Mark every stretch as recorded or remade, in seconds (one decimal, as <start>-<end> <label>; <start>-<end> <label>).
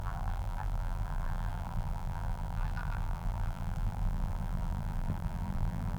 0.0-6.0 remade